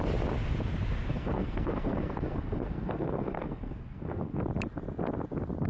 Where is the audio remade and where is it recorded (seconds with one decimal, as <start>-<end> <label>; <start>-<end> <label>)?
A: 0.0-1.1 recorded; 1.1-4.4 remade; 4.4-5.7 recorded